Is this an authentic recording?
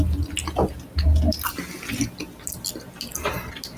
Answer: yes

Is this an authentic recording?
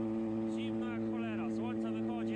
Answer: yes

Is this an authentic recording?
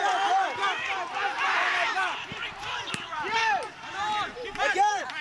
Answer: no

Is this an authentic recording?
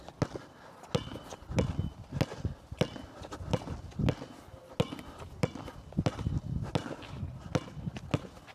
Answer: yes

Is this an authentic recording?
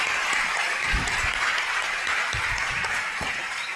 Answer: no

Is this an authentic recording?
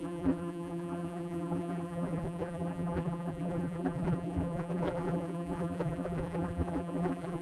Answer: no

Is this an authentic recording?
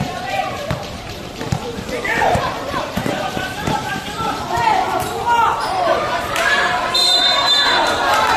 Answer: no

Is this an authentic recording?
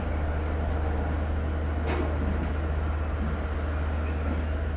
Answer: yes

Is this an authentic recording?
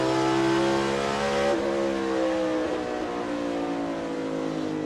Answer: yes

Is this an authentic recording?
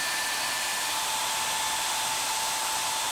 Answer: no